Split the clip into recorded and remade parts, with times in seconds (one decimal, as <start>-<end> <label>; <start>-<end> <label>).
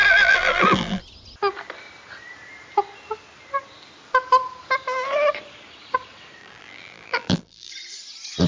0.0-1.0 remade; 1.0-6.4 recorded; 6.4-7.7 remade; 7.7-8.5 recorded